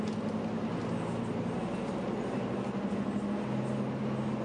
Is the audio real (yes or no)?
yes